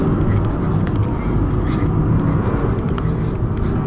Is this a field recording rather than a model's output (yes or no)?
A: yes